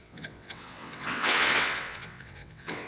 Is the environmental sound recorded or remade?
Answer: remade